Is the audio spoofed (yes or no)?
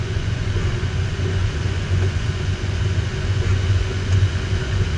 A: yes